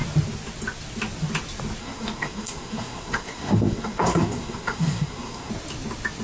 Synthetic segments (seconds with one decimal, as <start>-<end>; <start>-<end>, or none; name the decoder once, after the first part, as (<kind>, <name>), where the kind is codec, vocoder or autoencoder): 1.8-5.5 (codec, SNAC)